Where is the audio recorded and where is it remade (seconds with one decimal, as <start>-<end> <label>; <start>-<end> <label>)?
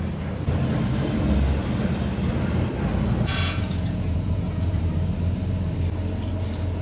0.0-3.3 recorded; 3.3-4.8 remade; 4.8-6.8 recorded